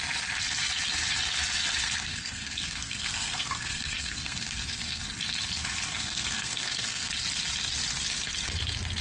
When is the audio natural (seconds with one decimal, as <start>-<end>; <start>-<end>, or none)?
0.0-1.8; 5.0-5.9; 7.1-9.0